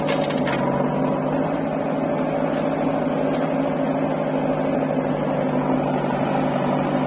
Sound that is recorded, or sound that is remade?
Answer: recorded